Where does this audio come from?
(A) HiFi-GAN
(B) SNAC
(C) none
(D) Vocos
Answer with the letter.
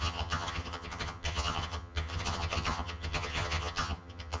A